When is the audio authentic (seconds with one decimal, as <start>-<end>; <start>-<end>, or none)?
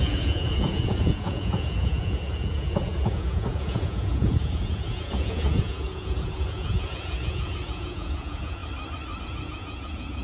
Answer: 8.6-9.2